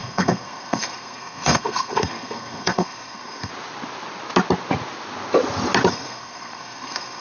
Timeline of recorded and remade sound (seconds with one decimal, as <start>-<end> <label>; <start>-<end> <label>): 0.0-3.5 remade; 3.5-5.9 recorded; 5.9-7.2 remade